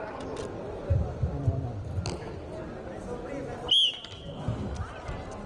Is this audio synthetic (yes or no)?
no